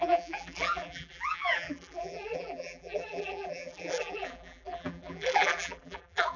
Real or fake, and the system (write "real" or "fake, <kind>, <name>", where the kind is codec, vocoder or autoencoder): fake, vocoder, BigVGAN v2